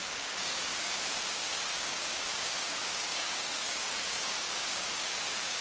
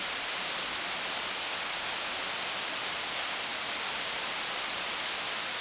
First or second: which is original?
second